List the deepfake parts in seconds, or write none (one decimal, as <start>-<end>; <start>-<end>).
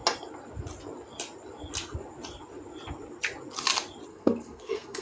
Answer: 4.1-5.0